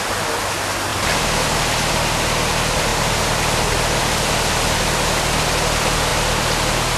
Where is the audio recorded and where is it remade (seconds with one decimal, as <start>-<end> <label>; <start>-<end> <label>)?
0.0-7.0 recorded